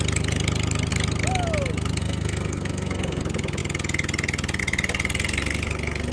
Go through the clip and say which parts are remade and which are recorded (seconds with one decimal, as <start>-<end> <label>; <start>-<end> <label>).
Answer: 0.0-2.0 recorded; 2.0-3.2 remade; 3.2-6.1 recorded